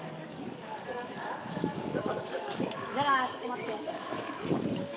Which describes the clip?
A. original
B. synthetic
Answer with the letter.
B